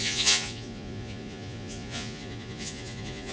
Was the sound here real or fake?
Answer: fake